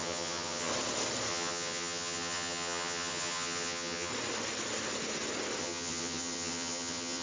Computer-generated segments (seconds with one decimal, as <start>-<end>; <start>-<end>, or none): 0.0-0.7; 1.3-4.1; 5.6-7.2